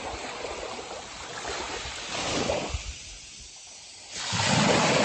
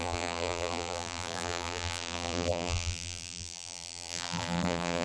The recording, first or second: first